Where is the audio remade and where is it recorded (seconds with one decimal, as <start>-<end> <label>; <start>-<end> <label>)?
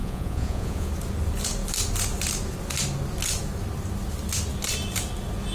0.0-0.9 remade; 0.9-5.5 recorded